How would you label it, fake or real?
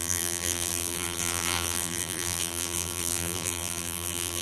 fake